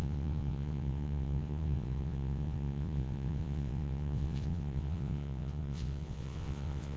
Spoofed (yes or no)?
yes